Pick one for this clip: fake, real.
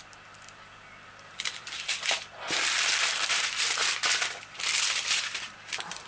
fake